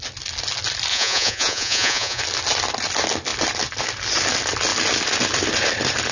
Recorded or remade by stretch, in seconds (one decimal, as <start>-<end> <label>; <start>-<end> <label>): 0.0-0.9 recorded; 0.9-2.2 remade; 2.2-6.1 recorded